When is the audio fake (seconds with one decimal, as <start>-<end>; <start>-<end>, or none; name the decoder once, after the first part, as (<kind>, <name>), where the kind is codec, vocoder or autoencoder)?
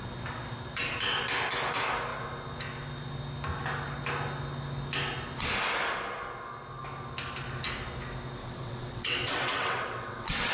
8.4-10.5 (vocoder, WaveNeXt)